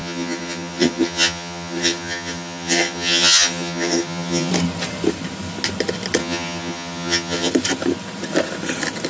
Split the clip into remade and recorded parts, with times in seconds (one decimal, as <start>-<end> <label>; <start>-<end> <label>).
0.0-4.5 remade; 4.5-6.2 recorded; 6.2-7.5 remade; 7.5-9.1 recorded